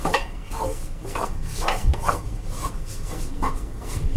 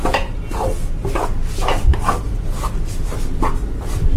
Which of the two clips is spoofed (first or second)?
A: first